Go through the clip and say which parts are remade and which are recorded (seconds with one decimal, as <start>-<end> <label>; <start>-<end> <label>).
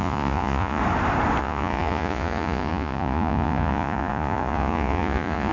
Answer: 0.0-0.8 remade; 0.8-1.4 recorded; 1.4-5.5 remade